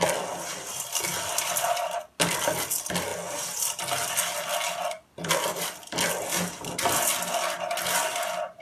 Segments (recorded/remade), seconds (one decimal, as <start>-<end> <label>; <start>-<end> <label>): 0.0-8.6 recorded